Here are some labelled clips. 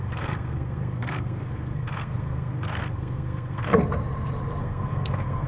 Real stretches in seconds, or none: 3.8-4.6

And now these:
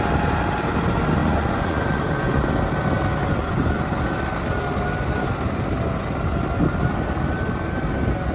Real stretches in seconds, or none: 0.0-1.2; 2.5-3.4; 3.9-8.3

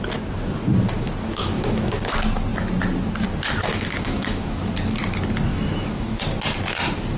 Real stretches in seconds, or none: 0.0-1.4; 2.1-3.7; 4.7-5.5; 6.2-7.2

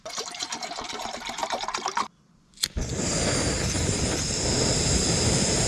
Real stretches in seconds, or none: 1.4-4.8

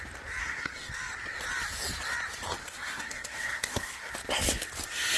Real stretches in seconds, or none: 0.0-0.4; 0.9-2.6; 4.1-5.2

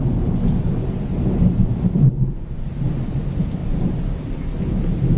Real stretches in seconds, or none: 0.0-0.7; 2.1-3.6; 4.3-5.2

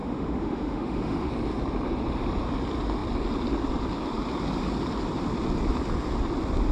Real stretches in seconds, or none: 1.3-6.7

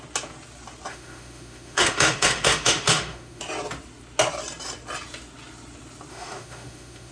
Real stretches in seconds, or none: 0.0-0.9; 3.4-6.1